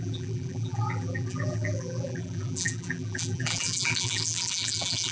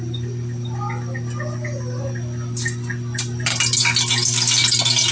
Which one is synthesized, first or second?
first